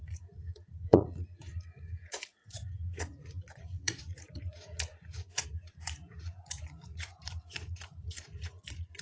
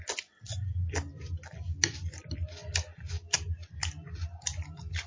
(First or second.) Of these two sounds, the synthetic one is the first